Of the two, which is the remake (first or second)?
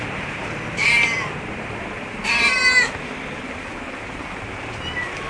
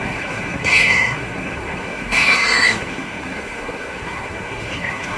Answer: second